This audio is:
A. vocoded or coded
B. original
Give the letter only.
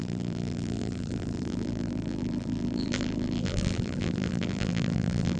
A